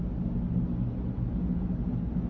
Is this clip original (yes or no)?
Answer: yes